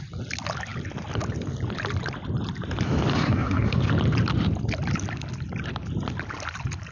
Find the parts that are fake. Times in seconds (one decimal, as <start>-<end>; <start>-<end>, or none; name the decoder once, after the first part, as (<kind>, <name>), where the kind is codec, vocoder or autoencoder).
3.1-3.8 (codec, SNAC)